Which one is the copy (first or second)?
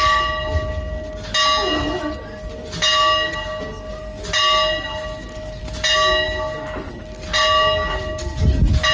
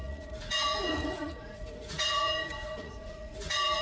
second